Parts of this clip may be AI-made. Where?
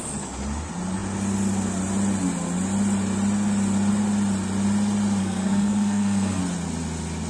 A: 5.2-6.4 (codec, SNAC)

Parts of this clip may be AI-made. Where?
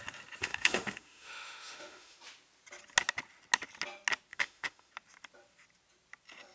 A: 0.4-2.2 (autoencoder, DAC-VAE); 4.3-4.9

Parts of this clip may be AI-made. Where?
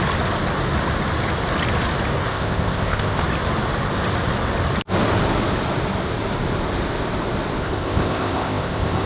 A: 2.3-3.2 (codec, ZipCodec); 7.6-9.1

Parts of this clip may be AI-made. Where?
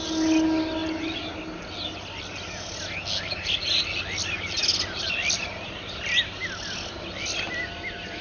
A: none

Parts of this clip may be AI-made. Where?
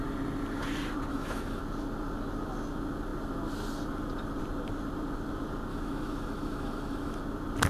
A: 1.1-1.6 (autoencoder, DAC-VAE); 5.7-7.2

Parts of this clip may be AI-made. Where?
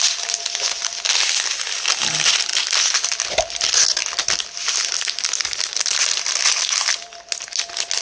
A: none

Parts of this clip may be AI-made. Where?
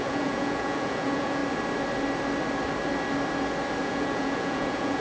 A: 0.0-1.4 (vocoder, Vocos); 3.8-5.0